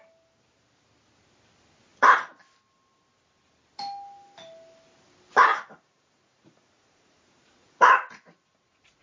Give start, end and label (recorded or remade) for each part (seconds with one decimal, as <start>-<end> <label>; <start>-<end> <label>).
0.0-5.5 recorded; 5.5-9.0 remade